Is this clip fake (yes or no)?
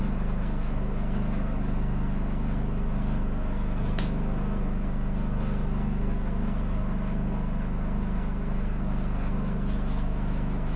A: yes